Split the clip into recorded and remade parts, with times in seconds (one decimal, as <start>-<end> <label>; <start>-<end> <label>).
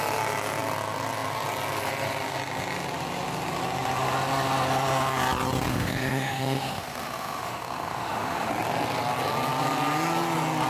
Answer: 0.0-5.7 recorded; 5.7-8.5 remade; 8.5-10.7 recorded